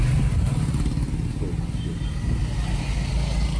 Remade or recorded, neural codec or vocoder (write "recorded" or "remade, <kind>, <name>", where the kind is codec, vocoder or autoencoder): recorded